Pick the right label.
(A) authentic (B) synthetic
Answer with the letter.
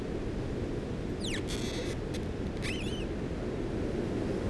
A